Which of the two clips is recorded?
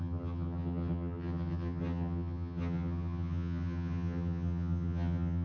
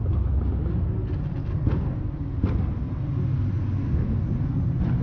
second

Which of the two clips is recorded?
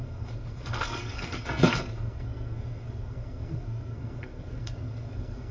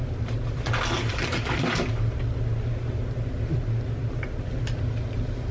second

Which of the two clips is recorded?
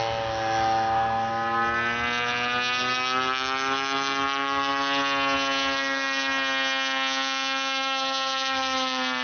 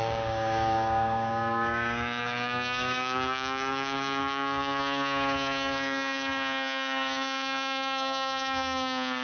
first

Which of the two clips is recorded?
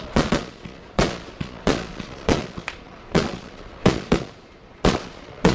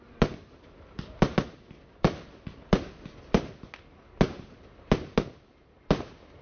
second